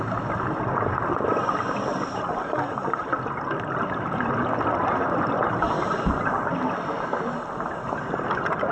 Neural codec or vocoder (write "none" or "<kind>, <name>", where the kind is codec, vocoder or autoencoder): none